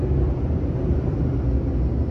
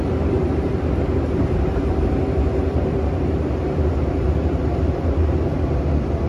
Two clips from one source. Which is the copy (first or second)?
second